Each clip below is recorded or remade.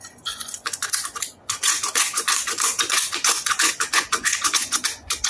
remade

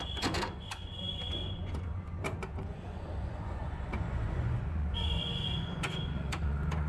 remade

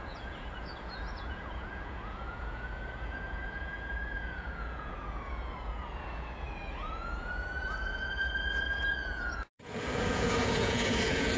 remade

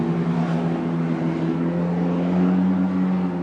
recorded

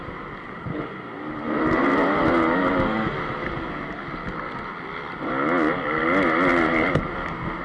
recorded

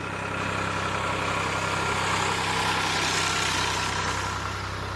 recorded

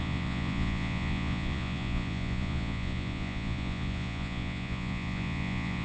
remade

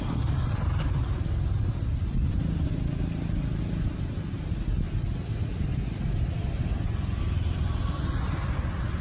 recorded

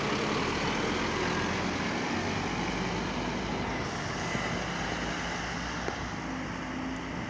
recorded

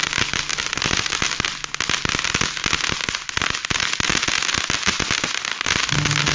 recorded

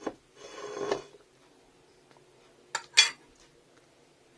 recorded